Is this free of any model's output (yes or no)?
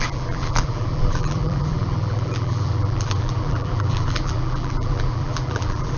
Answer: no